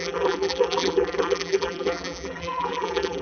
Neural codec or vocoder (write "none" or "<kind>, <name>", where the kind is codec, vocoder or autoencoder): vocoder, BigVGAN v2